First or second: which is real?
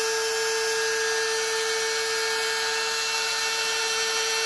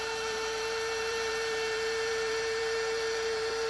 first